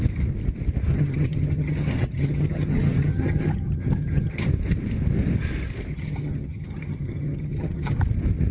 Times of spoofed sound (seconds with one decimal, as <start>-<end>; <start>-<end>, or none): 0.9-4.5; 5.9-8.0